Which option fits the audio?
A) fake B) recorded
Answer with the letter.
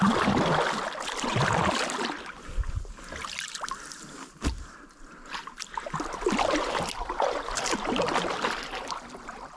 B